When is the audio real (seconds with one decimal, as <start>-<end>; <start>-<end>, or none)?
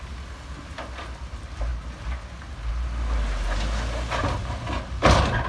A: 0.0-5.5